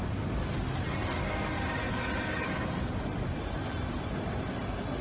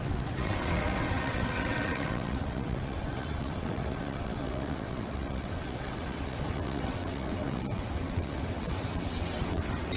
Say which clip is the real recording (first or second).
first